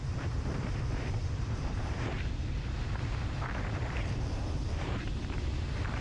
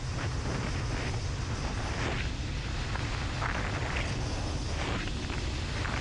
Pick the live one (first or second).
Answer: second